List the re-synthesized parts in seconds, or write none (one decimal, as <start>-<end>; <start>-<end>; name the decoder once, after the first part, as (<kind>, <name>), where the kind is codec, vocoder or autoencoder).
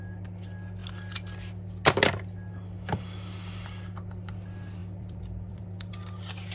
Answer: 4.8-5.9 (vocoder, BigVGAN v2)